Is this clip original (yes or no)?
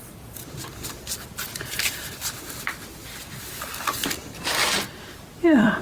yes